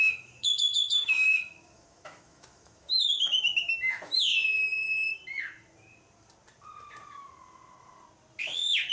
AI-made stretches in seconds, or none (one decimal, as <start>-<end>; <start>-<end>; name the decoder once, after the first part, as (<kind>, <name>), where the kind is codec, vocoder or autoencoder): 0.0-4.3 (autoencoder, DAC-VAE); 8.4-8.9